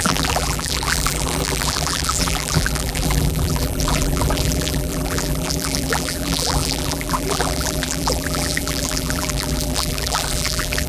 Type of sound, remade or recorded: remade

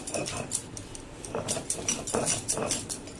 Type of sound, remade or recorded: remade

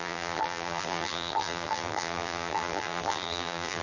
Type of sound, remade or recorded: remade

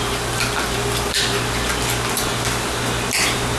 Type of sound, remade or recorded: recorded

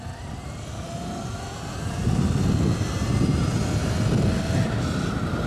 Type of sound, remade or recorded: recorded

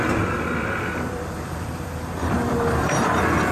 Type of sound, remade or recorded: remade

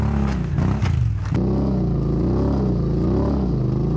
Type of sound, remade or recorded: recorded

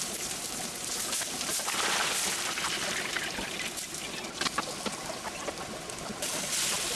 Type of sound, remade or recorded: recorded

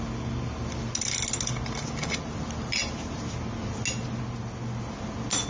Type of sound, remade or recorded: recorded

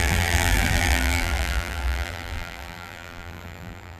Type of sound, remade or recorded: remade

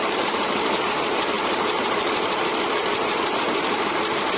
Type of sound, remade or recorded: remade